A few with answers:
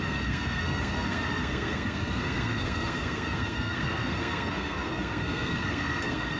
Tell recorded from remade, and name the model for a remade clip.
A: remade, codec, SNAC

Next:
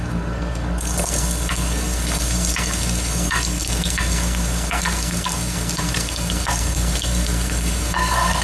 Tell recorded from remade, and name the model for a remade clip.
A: remade, codec, SNAC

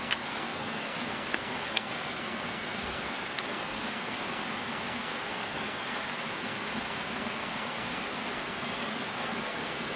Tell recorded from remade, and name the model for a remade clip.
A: remade, codec, SNAC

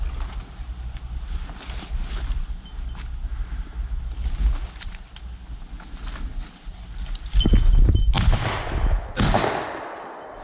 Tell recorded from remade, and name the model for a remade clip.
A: recorded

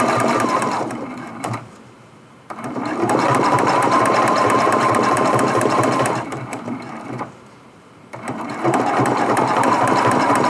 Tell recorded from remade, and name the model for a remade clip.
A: remade, vocoder, BigVGAN v2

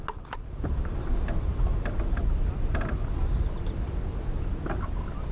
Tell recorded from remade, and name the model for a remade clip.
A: recorded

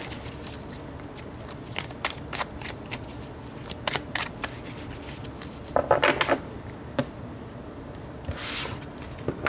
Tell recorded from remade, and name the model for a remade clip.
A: recorded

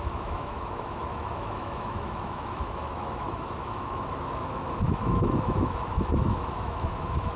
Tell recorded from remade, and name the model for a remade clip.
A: remade, autoencoder, DAC-VAE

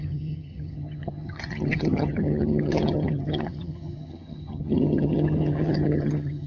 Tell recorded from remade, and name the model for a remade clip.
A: remade, vocoder, HiFi-GAN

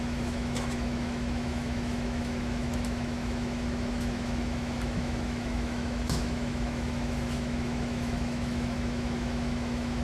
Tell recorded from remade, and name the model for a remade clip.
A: remade, autoencoder, DAC-VAE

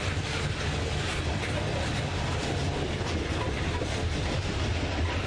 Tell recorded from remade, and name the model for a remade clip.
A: recorded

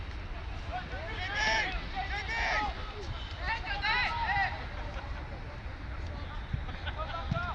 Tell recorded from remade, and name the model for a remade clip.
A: recorded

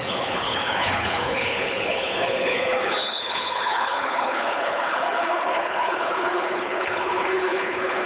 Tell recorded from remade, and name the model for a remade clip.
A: remade, codec, HILCodec